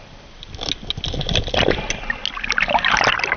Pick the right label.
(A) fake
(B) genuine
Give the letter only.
B